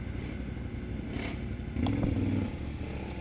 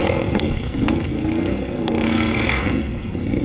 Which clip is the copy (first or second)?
second